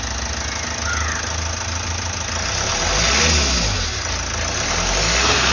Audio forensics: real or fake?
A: real